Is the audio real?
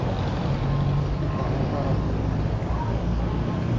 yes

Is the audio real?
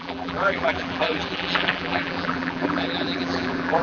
no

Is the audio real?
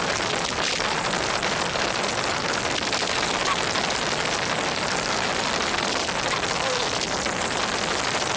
yes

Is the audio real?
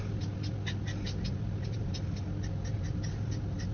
yes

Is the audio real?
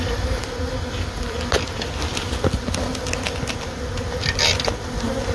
yes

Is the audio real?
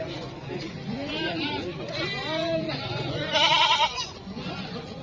no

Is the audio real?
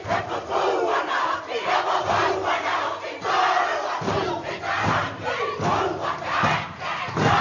yes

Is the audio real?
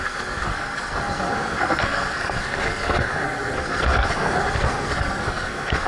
no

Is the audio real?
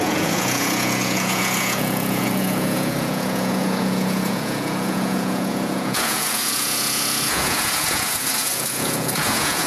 no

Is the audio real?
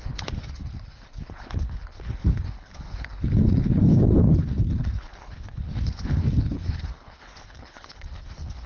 no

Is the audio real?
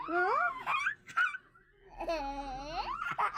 yes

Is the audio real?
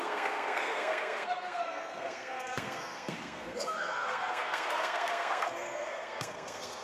no